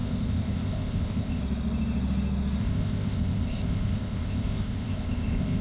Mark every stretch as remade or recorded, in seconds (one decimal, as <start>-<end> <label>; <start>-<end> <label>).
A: 0.0-1.4 remade; 1.4-2.6 recorded; 2.6-5.6 remade